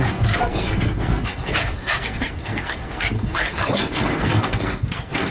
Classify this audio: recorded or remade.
remade